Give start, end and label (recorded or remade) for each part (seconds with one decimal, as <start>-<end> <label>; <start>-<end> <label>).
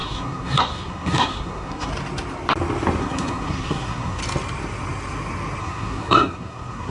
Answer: 0.0-1.9 remade; 1.9-3.0 recorded; 3.0-4.2 remade; 4.2-5.6 recorded; 5.6-6.9 remade